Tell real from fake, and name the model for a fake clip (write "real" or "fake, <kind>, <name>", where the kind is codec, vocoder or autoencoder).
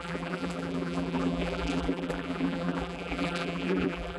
fake, vocoder, BigVGAN v2